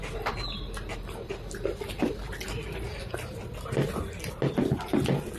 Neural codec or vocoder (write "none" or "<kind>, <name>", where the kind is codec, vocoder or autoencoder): none